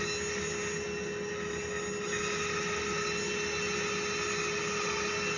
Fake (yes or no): no